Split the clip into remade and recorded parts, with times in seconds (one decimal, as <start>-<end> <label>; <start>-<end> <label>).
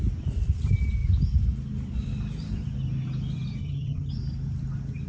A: 0.0-3.6 recorded; 3.6-4.1 remade; 4.1-5.1 recorded